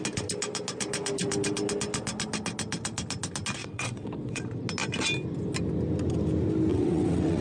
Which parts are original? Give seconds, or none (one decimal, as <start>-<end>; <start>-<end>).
0.0-3.6; 4.4-6.7